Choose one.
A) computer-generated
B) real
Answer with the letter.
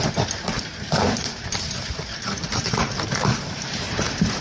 A